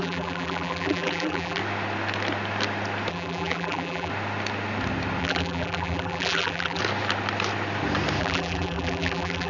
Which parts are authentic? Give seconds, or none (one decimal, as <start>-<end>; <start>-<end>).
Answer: 1.6-3.1; 4.1-5.2; 6.8-8.2